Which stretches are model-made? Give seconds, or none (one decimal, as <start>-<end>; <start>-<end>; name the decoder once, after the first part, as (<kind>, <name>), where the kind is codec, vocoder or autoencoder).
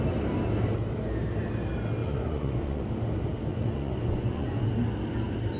2.0-2.8 (vocoder, Vocos); 3.5-4.7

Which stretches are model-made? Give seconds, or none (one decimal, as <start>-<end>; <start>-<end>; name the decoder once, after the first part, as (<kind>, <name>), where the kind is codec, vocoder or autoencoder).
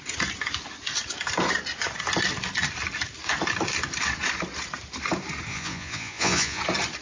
5.5-6.6 (vocoder, Vocos)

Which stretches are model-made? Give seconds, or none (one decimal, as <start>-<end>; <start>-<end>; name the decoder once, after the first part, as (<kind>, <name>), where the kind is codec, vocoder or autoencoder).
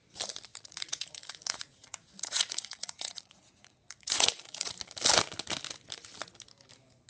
0.5-4.7 (vocoder, Vocos)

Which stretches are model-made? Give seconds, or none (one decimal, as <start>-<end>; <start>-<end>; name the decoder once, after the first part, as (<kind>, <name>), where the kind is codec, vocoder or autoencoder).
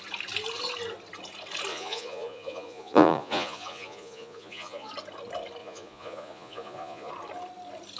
1.7-4.9 (vocoder, Vocos); 5.6-7.1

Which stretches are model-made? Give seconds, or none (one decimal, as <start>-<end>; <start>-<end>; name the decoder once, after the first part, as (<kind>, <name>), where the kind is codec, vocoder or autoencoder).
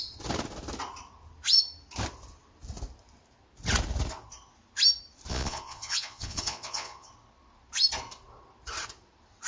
5.3-7.1 (vocoder, Vocos)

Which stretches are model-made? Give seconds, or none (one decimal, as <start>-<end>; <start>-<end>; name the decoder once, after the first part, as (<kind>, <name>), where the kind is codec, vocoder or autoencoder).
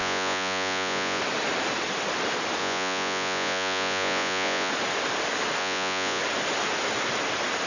0.0-1.2 (vocoder, Vocos); 2.6-4.7; 5.6-6.2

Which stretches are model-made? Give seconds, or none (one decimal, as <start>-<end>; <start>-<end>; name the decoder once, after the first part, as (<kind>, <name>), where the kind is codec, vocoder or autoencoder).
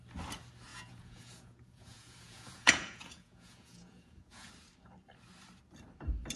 0.7-4.5 (vocoder, Vocos)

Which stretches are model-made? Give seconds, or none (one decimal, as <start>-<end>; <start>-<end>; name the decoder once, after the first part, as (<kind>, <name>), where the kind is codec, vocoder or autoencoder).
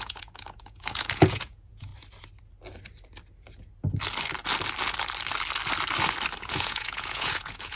0.0-1.9 (vocoder, Vocos); 6.4-7.8